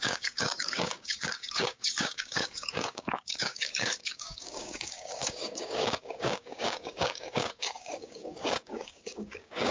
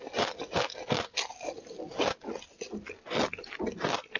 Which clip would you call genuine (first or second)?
second